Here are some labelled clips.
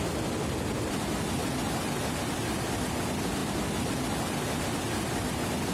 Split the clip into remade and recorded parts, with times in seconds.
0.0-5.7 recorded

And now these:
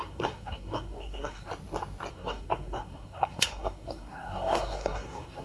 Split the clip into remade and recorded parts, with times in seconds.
0.0-1.5 remade; 1.5-2.1 recorded; 2.1-5.4 remade

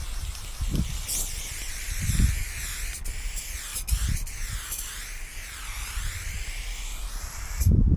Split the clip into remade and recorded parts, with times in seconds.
0.0-8.0 recorded

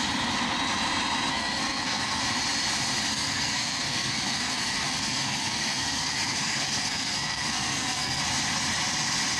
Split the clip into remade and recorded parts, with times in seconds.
0.0-1.3 recorded; 1.3-2.2 remade; 2.2-3.1 recorded; 3.1-8.2 remade; 8.2-9.4 recorded

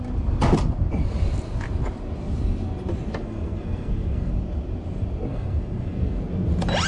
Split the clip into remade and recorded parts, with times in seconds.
0.0-3.2 recorded; 3.2-4.3 remade; 4.3-5.3 recorded; 5.3-6.2 remade; 6.2-6.9 recorded